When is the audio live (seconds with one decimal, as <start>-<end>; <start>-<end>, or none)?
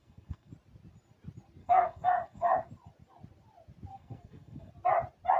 0.5-1.6; 2.7-3.9; 4.7-5.4